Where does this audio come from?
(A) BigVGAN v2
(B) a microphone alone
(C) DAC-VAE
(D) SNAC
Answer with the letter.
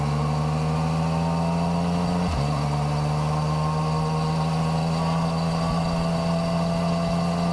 B